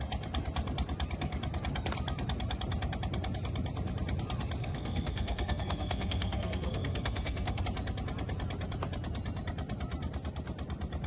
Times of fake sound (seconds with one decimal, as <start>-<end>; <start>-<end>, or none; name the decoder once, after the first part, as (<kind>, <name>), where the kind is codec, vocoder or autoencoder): 4.6-7.6 (codec, SNAC)